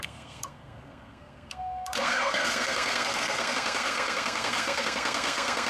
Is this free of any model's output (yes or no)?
no